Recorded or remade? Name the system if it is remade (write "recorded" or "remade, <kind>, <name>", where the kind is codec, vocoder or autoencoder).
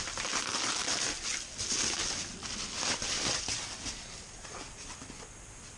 recorded